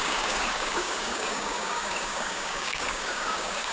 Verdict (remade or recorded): remade